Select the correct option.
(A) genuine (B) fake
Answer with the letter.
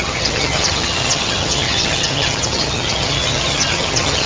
B